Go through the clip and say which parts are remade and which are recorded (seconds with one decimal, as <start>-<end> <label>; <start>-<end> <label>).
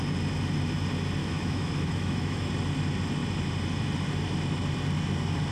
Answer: 0.0-1.2 recorded; 1.2-2.5 remade; 2.5-5.5 recorded